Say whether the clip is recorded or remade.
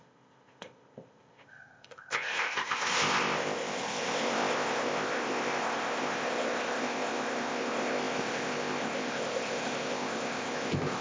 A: remade